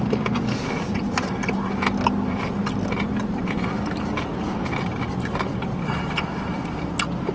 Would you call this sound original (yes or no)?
yes